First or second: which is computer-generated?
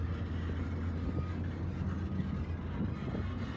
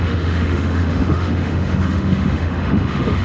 second